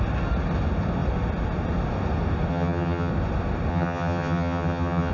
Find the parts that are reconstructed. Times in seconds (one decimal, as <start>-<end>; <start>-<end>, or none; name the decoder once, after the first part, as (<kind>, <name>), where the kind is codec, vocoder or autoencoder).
2.5-3.1 (vocoder, HiFi-GAN); 3.7-5.1